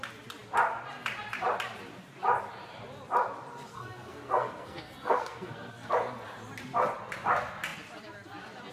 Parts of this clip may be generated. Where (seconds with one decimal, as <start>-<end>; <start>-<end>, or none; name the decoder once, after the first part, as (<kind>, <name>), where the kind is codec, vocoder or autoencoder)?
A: 3.7-5.9 (codec, SNAC)